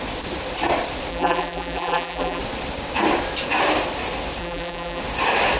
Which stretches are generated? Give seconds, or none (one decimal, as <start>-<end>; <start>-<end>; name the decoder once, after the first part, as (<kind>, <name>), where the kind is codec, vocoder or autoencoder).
1.1-2.4 (vocoder, BigVGAN v2); 4.4-5.0